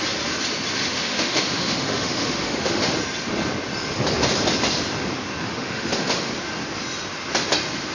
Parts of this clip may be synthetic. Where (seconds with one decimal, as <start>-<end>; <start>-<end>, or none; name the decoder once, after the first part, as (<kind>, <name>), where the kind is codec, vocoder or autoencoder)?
0.8-2.9 (autoencoder, DAC-VAE); 5.4-6.3